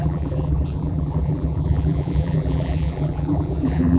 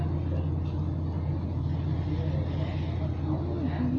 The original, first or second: second